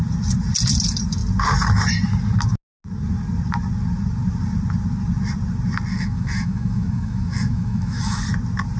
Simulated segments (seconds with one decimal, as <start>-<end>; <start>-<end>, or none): 5.9-8.2